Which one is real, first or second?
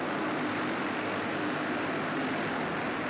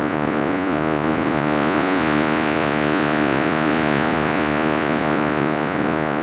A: first